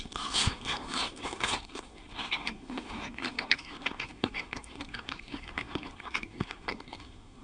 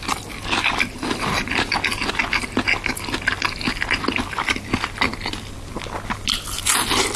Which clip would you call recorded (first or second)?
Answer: second